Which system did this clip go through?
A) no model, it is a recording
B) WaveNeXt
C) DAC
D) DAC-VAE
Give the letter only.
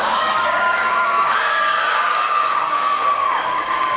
C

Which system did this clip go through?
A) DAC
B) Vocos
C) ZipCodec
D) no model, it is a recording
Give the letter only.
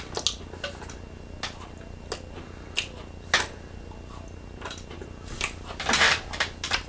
D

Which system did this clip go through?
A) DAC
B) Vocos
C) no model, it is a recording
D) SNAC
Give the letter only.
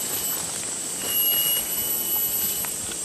C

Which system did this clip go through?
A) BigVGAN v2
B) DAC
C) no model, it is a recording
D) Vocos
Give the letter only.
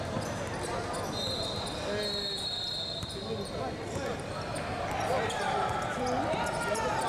C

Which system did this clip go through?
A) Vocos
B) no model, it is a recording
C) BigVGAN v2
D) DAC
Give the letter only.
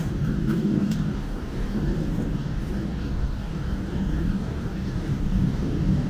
D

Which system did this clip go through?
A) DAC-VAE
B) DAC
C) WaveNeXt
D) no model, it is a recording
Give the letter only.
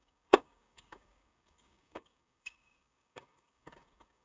B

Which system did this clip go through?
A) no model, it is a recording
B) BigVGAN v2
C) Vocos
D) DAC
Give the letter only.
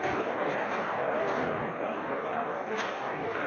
D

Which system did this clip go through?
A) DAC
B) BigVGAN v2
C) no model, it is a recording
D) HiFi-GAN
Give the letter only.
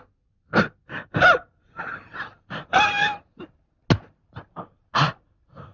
C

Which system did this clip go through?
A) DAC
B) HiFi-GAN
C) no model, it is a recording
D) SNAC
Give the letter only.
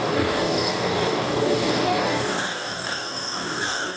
A